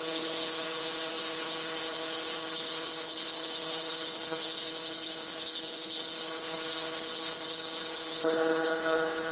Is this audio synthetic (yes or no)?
yes